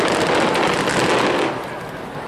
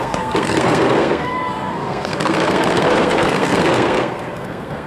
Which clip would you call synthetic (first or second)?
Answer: second